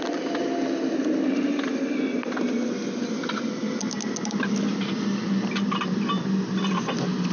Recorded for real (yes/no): yes